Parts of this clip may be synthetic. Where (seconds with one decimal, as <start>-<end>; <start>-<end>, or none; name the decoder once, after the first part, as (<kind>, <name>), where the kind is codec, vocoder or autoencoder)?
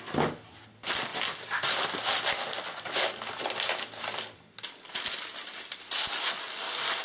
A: none